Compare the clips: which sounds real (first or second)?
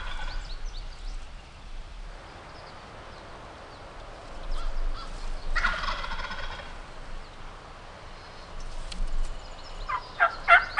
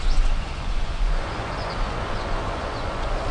first